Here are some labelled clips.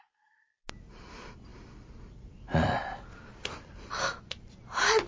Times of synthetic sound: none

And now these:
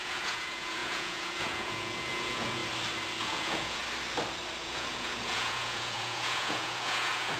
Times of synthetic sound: 0.0-2.6 (vocoder, Vocos); 3.2-3.8; 4.6-7.4

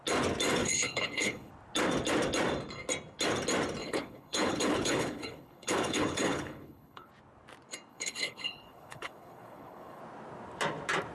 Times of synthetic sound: 0.6-1.5 (codec, HILCodec); 3.8-7.1; 7.9-10.0

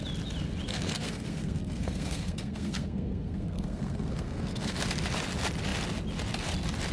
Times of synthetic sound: 0.7-4.8 (codec, SNAC)

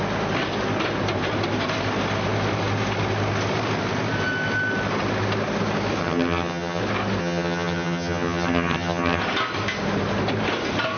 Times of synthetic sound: 6.0-6.8 (vocoder, HiFi-GAN); 7.2-9.2

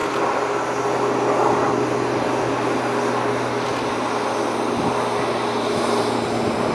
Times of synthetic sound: none